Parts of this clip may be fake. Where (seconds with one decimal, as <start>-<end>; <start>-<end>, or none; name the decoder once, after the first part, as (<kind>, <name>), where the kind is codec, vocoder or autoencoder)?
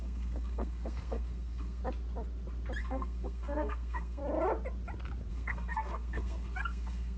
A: 0.0-1.8 (codec, SNAC); 2.8-4.2; 5.3-7.2